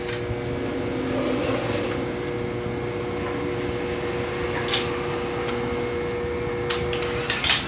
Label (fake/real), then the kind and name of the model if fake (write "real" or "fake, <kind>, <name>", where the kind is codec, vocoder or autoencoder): real